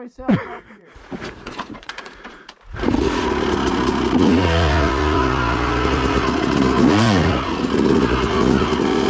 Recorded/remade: remade